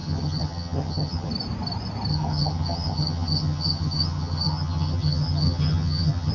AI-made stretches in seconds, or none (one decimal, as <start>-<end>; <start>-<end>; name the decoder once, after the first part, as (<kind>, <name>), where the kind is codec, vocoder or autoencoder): 0.0-1.3 (vocoder, HiFi-GAN); 2.1-6.3